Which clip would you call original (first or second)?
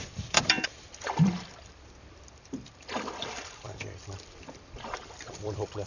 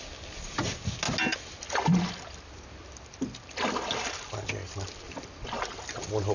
second